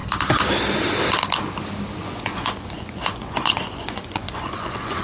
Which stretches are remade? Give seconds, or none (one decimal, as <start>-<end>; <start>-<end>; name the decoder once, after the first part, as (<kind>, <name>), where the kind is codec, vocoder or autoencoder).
2.0-5.0 (vocoder, Vocos)